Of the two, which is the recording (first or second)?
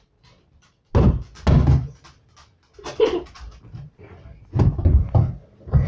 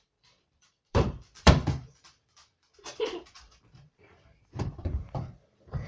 first